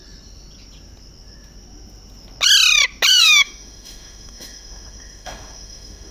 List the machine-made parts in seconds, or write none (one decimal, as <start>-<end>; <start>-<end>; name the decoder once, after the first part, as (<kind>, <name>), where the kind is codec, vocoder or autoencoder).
3.1-6.1 (autoencoder, DAC-VAE)